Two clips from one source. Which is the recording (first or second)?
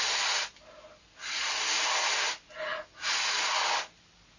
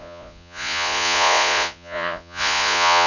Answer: first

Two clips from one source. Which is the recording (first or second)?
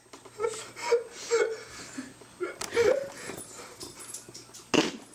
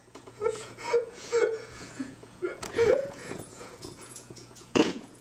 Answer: first